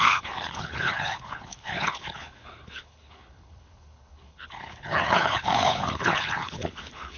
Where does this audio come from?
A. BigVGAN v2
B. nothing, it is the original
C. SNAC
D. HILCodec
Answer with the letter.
D